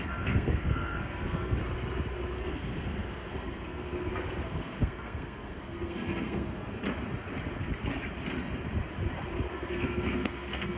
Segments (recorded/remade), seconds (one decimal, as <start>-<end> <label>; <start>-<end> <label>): 0.0-1.6 remade; 1.6-2.4 recorded; 2.4-6.8 remade; 6.8-9.5 recorded; 9.5-10.8 remade